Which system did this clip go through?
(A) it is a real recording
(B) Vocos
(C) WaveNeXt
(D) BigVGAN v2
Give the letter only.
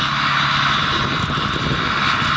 A